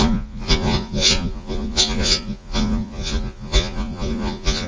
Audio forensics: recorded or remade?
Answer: remade